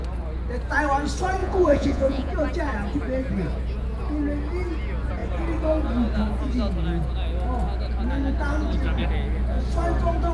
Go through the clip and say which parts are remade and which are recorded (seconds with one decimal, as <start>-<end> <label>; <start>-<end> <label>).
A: 0.0-1.4 recorded; 1.4-2.3 remade; 2.3-10.3 recorded